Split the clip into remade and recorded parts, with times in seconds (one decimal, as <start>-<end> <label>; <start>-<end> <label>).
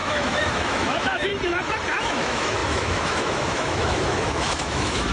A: 0.0-1.3 remade; 1.3-2.0 recorded; 2.0-5.1 remade